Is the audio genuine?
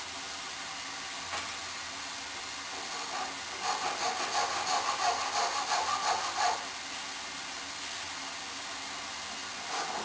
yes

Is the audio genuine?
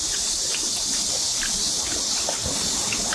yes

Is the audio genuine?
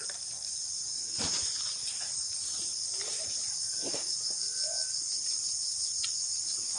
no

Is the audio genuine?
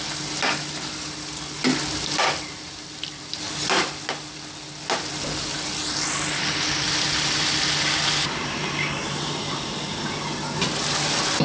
yes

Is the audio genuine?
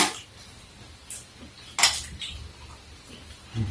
yes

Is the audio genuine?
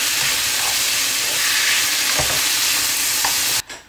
yes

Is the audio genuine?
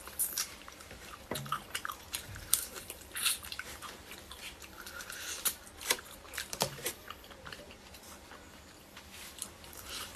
no